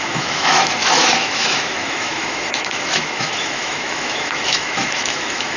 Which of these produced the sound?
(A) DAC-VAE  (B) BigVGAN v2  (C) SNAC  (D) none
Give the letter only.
A